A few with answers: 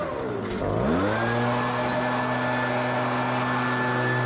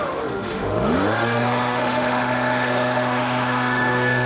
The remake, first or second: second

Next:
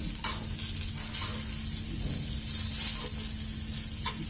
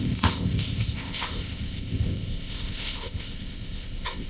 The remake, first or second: second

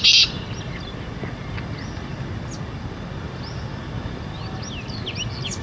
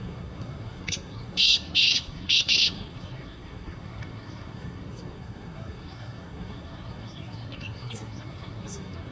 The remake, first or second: second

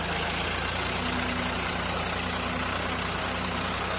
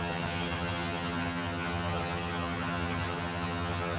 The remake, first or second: second